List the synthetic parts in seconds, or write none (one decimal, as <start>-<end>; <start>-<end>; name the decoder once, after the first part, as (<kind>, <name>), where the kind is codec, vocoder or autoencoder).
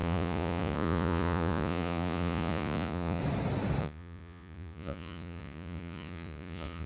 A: 0.0-3.2 (vocoder, Vocos); 3.8-6.9